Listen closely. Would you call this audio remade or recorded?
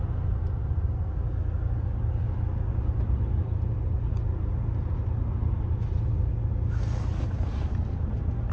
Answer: recorded